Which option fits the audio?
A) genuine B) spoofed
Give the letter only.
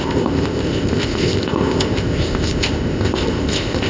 B